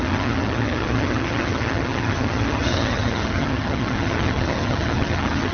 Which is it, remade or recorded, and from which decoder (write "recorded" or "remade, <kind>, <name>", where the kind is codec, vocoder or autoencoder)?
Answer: remade, vocoder, HiFi-GAN